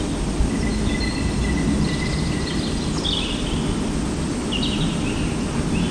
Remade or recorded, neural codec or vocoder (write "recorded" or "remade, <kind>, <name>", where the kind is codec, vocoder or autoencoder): recorded